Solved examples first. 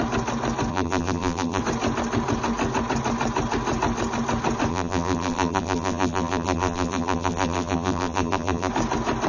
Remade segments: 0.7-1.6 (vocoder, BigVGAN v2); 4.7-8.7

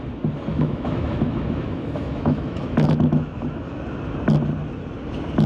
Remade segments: 0.5-3.8 (autoencoder, DAC-VAE)